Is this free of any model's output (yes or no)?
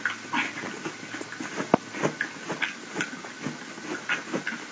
yes